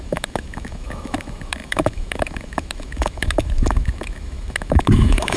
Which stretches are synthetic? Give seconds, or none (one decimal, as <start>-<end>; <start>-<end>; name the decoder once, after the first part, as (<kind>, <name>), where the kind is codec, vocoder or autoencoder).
0.0-5.4 (autoencoder, DAC-VAE)